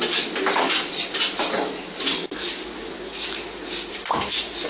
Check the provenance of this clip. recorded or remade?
recorded